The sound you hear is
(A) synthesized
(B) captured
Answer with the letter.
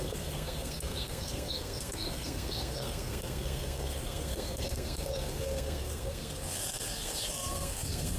A